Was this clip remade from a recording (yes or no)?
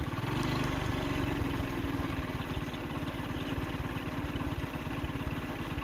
no